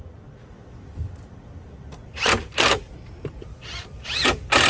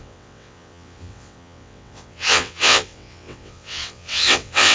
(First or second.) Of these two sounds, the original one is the first